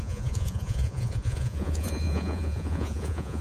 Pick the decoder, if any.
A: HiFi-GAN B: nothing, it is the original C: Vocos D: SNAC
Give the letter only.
C